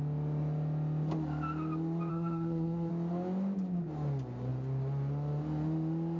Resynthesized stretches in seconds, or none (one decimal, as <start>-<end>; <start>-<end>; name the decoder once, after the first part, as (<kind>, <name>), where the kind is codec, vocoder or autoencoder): 2.1-2.9 (codec, SNAC)